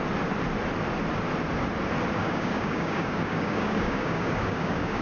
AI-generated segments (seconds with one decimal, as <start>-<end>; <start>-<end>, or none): 2.2-5.0